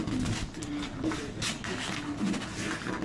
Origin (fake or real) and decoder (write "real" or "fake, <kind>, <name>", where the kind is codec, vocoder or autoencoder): real